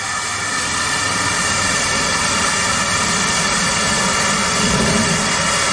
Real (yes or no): yes